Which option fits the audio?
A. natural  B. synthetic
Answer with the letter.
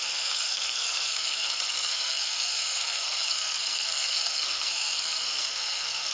B